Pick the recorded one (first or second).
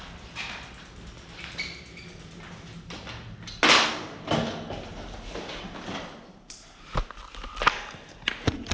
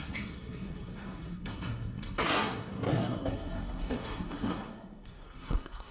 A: first